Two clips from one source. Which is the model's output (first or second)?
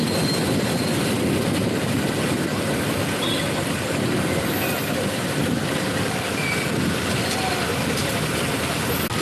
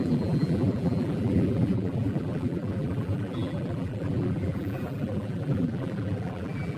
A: second